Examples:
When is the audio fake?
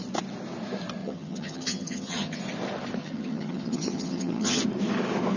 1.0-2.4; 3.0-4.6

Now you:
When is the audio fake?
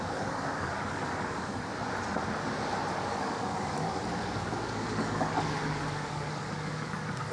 0.0-1.7; 2.9-7.3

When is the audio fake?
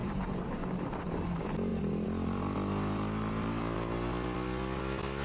0.0-0.6